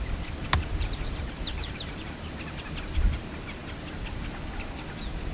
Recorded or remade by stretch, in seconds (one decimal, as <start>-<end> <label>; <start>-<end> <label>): 0.0-0.4 recorded; 0.4-2.4 remade; 2.4-5.3 recorded